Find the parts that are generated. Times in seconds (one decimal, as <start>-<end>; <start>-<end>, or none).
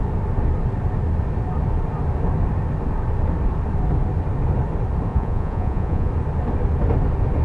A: 5.1-6.1